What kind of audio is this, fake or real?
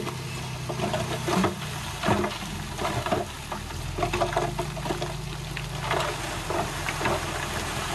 real